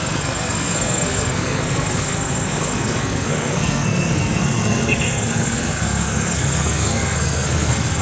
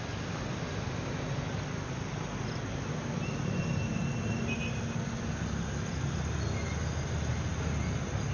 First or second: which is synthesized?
first